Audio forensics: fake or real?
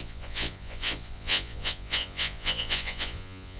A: fake